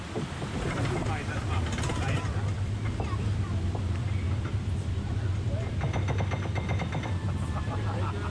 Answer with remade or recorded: recorded